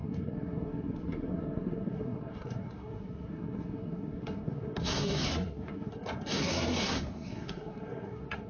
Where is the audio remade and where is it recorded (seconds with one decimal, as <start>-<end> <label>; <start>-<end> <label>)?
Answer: 0.0-8.5 remade